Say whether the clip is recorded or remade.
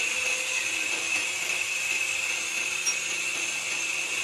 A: recorded